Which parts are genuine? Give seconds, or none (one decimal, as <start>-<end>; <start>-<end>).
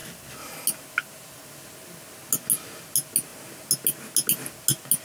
0.0-5.0